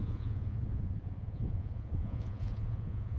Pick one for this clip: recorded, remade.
remade